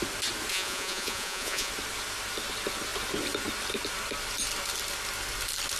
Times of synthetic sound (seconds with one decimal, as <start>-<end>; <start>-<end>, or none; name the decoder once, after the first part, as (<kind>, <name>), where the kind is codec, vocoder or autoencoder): 0.5-1.7 (vocoder, Vocos)